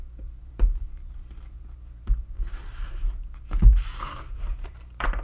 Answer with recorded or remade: remade